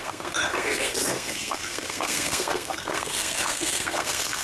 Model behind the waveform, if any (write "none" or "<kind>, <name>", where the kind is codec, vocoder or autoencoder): codec, SNAC